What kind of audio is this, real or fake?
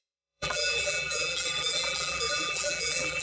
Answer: fake